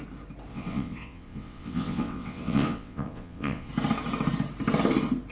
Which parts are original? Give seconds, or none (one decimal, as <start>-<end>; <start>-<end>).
0.0-0.5; 3.7-5.3